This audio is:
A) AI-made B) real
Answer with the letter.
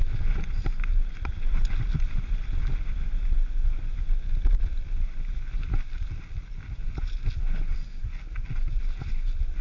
B